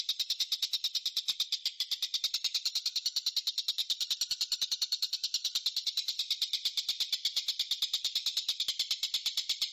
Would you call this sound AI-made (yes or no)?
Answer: yes